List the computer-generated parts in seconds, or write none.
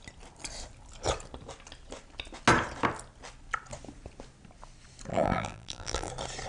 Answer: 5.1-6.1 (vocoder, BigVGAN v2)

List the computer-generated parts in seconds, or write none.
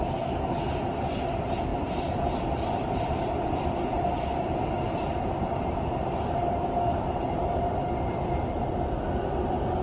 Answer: 1.7-5.6 (vocoder, BigVGAN v2); 6.0-8.9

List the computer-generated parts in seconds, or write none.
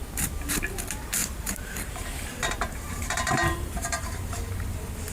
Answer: 1.2-4.3 (vocoder, BigVGAN v2)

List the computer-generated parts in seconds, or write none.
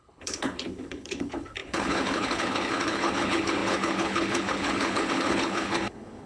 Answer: 0.0-6.3 (codec, HILCodec)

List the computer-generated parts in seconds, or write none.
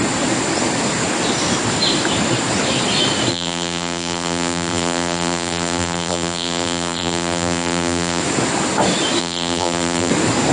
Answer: 3.3-8.2 (vocoder, BigVGAN v2); 9.2-10.1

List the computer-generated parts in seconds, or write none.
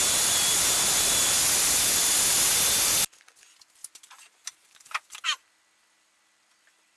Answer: 3.8-5.2 (vocoder, BigVGAN v2)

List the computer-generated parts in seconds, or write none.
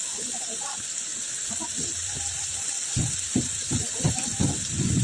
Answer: none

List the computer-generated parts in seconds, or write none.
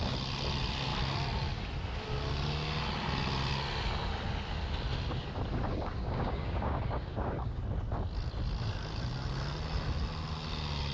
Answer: 5.7-7.6 (codec, DAC)